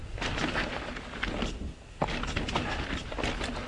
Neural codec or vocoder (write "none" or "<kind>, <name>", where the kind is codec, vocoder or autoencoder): none